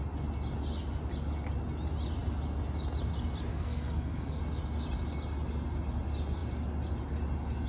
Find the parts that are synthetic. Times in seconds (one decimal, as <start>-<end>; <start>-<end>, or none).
3.5-4.4